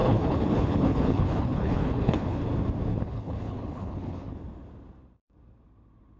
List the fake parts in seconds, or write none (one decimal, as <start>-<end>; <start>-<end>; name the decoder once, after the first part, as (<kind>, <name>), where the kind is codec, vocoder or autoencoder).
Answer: 0.0-2.5 (codec, HILCodec); 2.9-4.3